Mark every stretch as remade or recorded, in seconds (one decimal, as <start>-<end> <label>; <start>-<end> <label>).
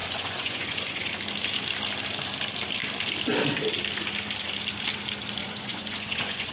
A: 0.0-1.1 remade; 1.1-5.4 recorded; 5.4-6.5 remade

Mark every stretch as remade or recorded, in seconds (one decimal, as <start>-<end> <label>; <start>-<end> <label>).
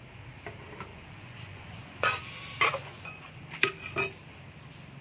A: 0.0-0.9 recorded; 0.9-2.2 remade; 2.2-2.8 recorded; 2.8-3.4 remade; 3.4-5.0 recorded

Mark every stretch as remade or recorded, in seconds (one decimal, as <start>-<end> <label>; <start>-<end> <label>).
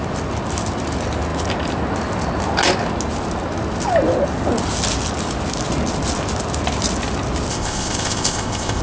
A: 0.0-7.5 recorded; 7.5-8.8 remade